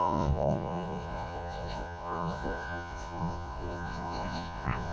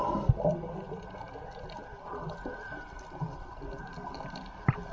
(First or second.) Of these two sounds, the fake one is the first